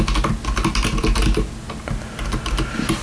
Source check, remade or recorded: recorded